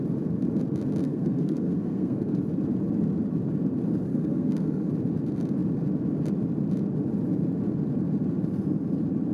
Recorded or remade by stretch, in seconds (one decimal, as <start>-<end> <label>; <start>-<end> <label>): 0.0-1.0 recorded; 1.0-2.4 remade; 2.4-4.1 recorded; 4.1-4.9 remade; 4.9-9.3 recorded